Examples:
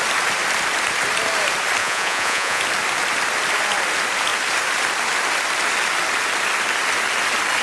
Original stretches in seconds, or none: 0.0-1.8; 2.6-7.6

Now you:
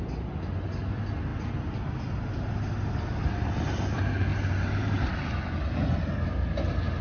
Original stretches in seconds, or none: 0.0-4.3; 5.1-7.0

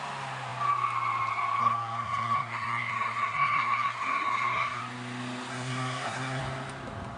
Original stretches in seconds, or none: 0.0-1.6; 4.8-5.5; 6.4-7.2

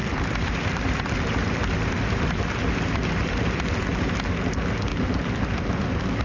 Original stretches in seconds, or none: 3.7-4.9